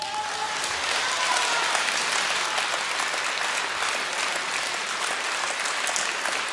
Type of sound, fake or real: real